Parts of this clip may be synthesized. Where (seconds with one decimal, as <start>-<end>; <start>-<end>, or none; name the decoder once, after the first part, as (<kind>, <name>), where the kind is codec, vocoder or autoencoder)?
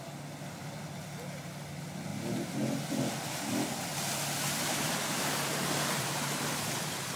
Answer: none